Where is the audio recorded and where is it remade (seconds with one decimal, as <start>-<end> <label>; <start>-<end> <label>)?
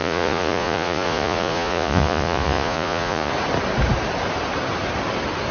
0.0-3.3 remade; 3.3-5.5 recorded